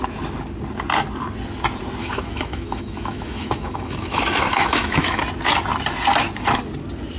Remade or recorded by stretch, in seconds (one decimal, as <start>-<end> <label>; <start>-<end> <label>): 0.0-2.0 recorded; 2.0-5.2 remade; 5.2-7.2 recorded